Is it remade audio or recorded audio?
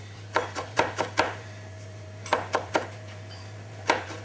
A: remade